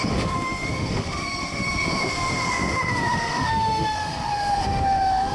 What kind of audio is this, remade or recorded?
remade